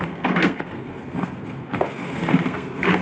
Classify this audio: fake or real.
fake